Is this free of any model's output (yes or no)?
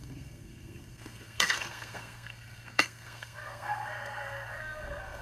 no